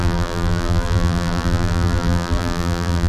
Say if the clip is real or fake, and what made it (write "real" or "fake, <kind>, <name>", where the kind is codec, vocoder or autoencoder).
fake, vocoder, BigVGAN v2